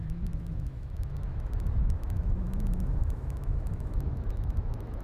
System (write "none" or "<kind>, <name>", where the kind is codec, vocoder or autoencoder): autoencoder, DAC-VAE